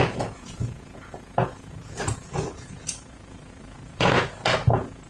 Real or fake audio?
fake